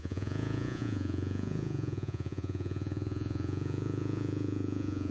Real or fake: fake